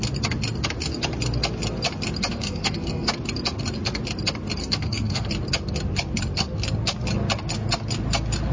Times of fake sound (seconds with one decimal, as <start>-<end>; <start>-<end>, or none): 2.3-3.1; 4.6-5.3